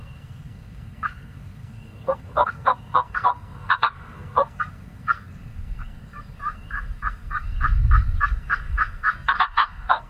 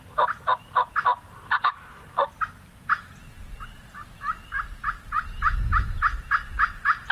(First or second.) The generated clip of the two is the first